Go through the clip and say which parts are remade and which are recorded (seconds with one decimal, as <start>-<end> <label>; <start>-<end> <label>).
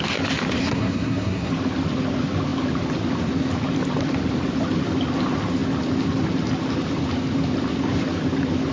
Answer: 0.0-0.6 recorded; 0.6-1.5 remade; 1.5-8.7 recorded